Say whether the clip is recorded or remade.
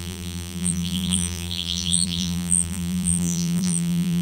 remade